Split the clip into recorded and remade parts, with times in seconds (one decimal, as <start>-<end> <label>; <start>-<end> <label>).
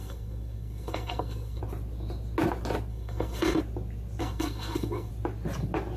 0.0-1.6 remade; 1.6-2.9 recorded; 2.9-3.6 remade; 3.6-4.2 recorded; 4.2-5.1 remade; 5.1-6.0 recorded